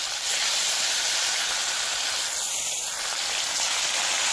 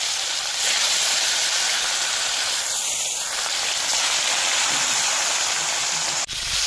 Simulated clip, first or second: second